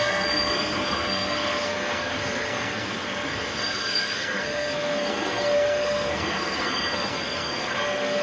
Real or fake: fake